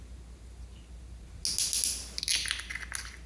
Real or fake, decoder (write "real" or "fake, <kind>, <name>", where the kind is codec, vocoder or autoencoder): real